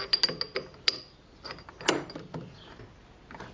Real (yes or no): yes